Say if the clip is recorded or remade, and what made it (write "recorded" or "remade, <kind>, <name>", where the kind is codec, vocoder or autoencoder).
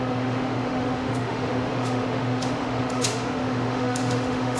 remade, autoencoder, DAC-VAE